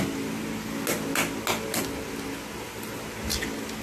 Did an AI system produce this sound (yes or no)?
no